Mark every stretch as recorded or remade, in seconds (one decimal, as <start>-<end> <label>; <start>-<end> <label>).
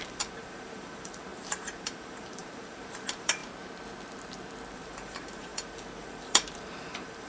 0.0-3.4 remade; 3.4-4.7 recorded; 4.7-7.3 remade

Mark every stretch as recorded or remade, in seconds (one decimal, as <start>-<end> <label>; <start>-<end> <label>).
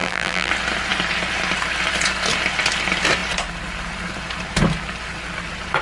0.0-0.5 remade; 0.5-5.8 recorded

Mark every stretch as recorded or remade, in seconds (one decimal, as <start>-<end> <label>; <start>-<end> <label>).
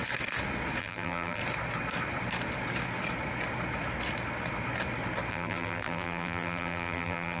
0.0-0.8 recorded; 0.8-1.4 remade; 1.4-5.3 recorded; 5.3-7.4 remade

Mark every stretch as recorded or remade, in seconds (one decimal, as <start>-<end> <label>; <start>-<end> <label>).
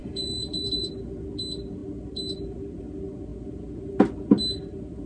0.0-0.9 remade; 0.9-5.1 recorded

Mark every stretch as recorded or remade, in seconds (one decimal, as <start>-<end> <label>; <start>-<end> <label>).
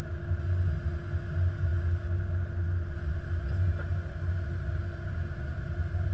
0.0-6.1 recorded